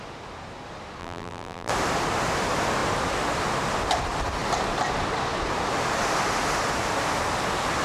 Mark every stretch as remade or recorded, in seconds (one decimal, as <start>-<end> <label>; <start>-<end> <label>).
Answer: 0.0-1.0 recorded; 1.0-1.7 remade; 1.7-7.8 recorded